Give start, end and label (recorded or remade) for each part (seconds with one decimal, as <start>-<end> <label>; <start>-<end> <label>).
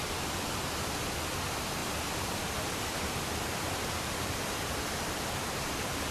0.0-6.1 recorded